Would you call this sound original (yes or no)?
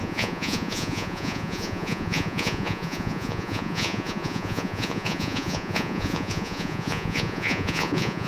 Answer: no